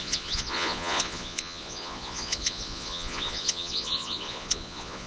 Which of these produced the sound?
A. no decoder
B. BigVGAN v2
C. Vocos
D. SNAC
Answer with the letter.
C